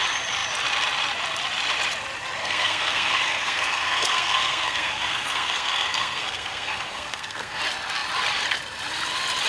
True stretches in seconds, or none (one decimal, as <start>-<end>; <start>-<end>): 0.0-2.4; 7.6-9.5